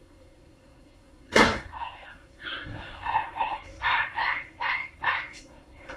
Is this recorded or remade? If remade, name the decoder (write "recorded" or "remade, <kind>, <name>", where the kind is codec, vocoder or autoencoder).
remade, codec, SNAC